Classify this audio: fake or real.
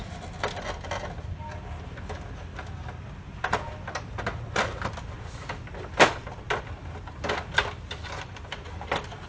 real